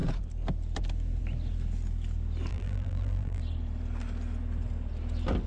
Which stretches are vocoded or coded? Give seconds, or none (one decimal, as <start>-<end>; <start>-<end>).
2.5-3.4

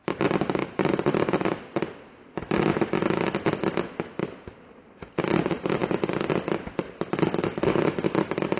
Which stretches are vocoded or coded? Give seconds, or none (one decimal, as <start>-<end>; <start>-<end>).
0.6-1.8; 4.2-5.2

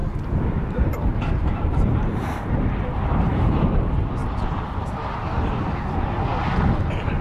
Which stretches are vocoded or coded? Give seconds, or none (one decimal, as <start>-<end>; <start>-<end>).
0.0-3.6